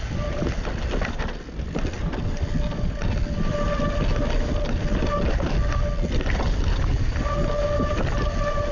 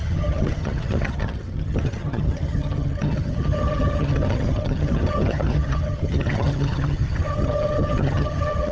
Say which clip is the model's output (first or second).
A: second